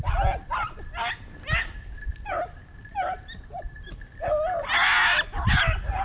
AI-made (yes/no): no